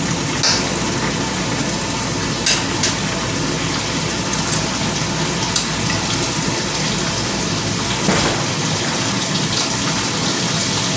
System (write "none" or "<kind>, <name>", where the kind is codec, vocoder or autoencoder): none